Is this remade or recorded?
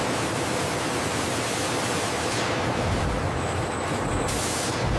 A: recorded